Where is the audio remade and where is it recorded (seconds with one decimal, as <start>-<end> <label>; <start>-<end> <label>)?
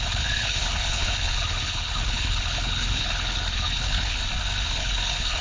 0.0-4.2 remade; 4.2-4.7 recorded; 4.7-5.4 remade